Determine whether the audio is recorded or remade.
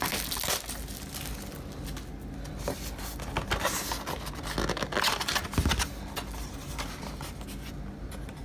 recorded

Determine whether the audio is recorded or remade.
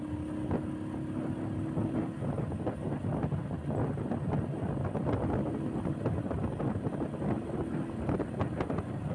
recorded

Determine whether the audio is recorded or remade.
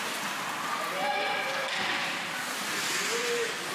recorded